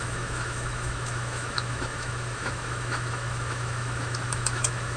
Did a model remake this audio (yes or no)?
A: yes